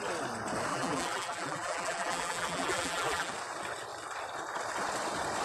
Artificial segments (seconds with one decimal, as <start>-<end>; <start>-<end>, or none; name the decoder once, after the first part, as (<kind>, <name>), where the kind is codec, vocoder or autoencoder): 0.7-3.3 (vocoder, BigVGAN v2)